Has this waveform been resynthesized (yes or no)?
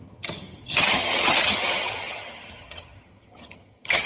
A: yes